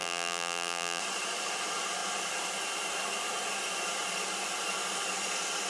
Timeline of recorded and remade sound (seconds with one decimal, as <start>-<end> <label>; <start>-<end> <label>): 0.0-1.0 remade; 1.0-5.7 recorded